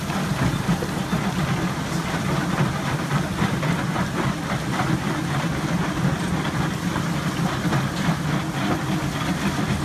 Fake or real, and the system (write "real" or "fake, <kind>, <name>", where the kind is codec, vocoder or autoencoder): real